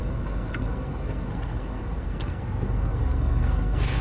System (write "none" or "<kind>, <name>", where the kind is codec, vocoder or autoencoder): codec, SNAC